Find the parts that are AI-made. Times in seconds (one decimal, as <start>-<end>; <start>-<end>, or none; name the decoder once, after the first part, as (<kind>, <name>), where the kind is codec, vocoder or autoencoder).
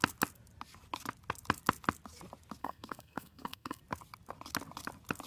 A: 2.6-3.8 (codec, SNAC)